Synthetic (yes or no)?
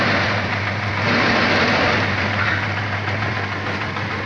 no